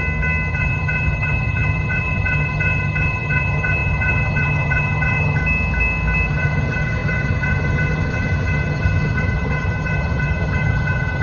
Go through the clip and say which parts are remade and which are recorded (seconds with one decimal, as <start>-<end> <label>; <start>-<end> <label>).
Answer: 0.0-0.5 recorded; 0.5-5.4 remade; 5.4-6.3 recorded; 6.3-11.2 remade